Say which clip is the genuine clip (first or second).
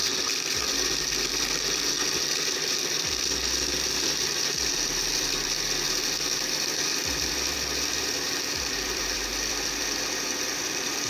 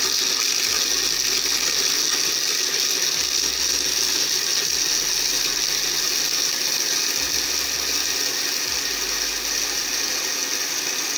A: second